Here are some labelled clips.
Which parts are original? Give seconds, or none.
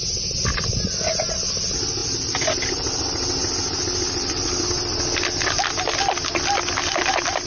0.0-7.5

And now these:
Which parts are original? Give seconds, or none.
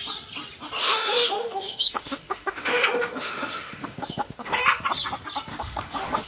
0.0-0.8; 4.6-5.5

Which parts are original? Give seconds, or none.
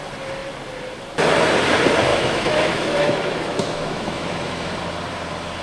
0.0-2.1; 4.7-5.6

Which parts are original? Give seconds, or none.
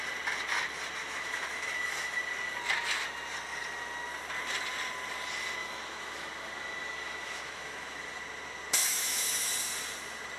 0.0-1.0; 2.2-5.6; 8.2-8.8; 9.5-10.4